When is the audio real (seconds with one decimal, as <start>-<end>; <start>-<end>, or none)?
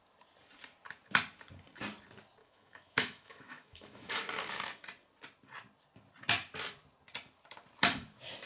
0.0-2.4; 4.2-8.5